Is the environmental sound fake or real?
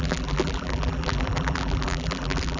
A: fake